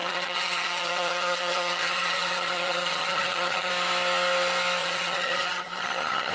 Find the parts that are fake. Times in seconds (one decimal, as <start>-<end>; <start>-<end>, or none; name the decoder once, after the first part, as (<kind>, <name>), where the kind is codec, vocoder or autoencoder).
0.0-3.7 (vocoder, HiFi-GAN); 4.8-6.3